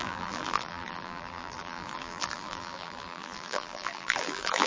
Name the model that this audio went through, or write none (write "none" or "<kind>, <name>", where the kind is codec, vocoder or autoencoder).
vocoder, BigVGAN v2